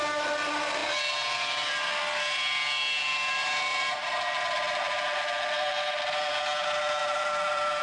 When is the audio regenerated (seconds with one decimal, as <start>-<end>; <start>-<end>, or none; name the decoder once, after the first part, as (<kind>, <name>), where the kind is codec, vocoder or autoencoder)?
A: 3.7-6.3 (vocoder, BigVGAN v2); 7.0-7.8

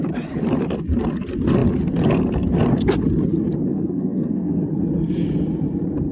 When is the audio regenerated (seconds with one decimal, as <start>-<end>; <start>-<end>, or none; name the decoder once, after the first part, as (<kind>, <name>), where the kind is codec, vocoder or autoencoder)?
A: 3.7-4.6 (codec, SNAC)